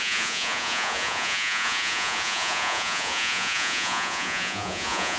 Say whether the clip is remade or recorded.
remade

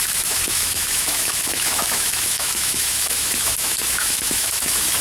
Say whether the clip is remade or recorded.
remade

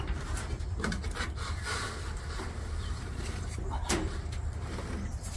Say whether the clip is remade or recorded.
remade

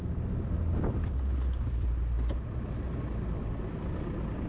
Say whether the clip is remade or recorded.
recorded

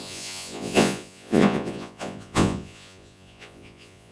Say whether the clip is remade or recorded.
remade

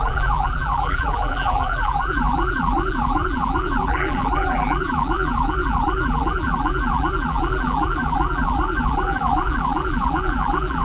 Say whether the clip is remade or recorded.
remade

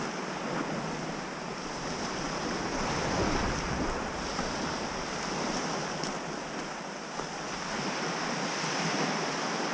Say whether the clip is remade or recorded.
recorded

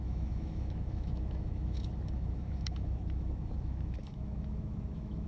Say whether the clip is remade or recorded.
remade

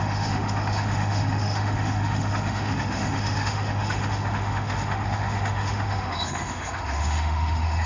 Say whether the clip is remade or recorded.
remade